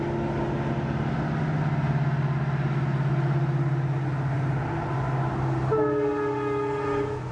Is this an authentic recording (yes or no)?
yes